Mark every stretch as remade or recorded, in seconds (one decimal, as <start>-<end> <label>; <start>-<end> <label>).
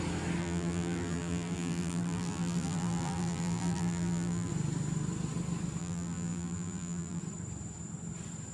0.0-0.4 recorded; 0.4-4.5 remade; 4.5-5.8 recorded; 5.8-7.2 remade; 7.2-8.5 recorded